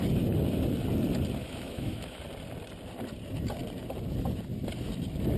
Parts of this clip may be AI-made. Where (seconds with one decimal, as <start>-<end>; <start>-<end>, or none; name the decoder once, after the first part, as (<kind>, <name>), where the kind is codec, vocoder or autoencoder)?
1.4-2.2 (autoencoder, DAC-VAE)